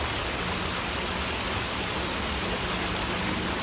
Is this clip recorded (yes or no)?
yes